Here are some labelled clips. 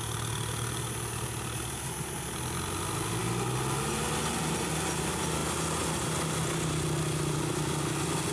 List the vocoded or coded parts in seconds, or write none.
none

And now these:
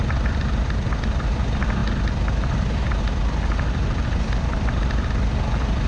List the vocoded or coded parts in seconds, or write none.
none

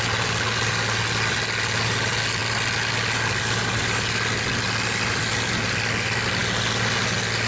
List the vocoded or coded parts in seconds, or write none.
none